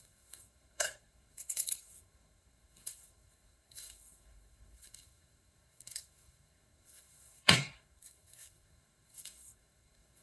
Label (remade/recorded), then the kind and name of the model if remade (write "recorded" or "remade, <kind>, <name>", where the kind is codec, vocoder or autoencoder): remade, codec, SNAC